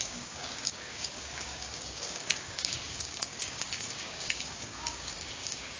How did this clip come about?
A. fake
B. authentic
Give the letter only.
A